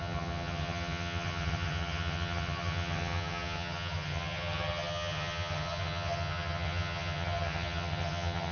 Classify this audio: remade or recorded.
remade